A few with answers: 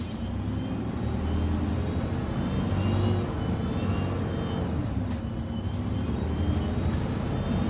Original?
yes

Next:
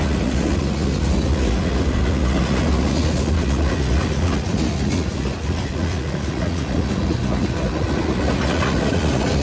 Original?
no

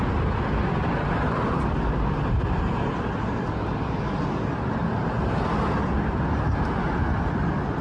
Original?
yes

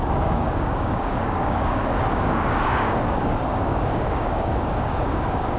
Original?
no